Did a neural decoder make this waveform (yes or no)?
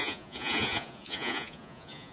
yes